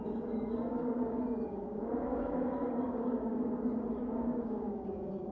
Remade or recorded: remade